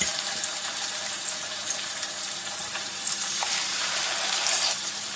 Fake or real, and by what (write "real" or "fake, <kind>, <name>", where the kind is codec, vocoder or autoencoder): fake, vocoder, BigVGAN v2